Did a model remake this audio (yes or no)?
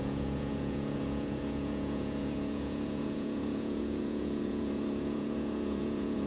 yes